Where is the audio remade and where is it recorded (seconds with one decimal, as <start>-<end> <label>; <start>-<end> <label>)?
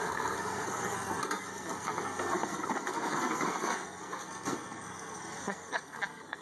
0.0-6.4 remade